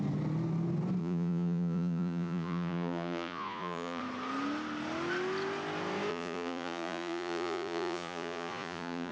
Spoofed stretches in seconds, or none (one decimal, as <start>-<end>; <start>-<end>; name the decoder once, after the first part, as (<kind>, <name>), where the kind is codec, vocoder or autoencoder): 1.0-4.0 (vocoder, Vocos); 6.1-9.1